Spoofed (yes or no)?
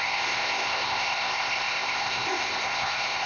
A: yes